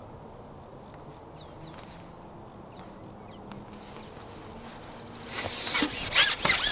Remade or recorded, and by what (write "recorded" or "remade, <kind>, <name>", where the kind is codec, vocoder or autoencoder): recorded